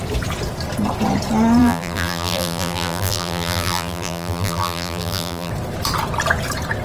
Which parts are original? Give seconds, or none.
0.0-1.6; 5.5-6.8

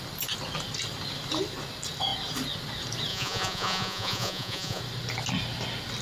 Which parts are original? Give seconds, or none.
0.0-3.1; 4.8-6.0

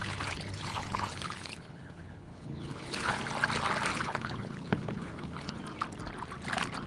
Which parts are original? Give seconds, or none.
3.2-3.9; 5.6-6.9

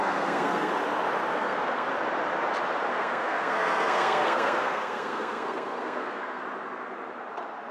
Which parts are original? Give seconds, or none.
0.7-1.3; 1.9-2.9; 6.4-7.7

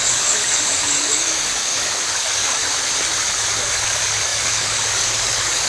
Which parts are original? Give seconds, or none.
2.6-3.2

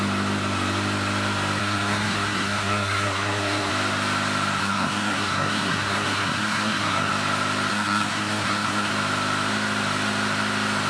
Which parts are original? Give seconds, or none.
0.0-1.6; 3.7-4.6; 7.1-7.7; 8.9-10.9